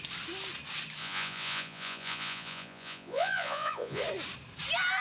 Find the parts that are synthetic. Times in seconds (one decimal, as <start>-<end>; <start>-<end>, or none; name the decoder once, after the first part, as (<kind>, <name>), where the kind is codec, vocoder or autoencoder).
1.0-4.0 (vocoder, Vocos)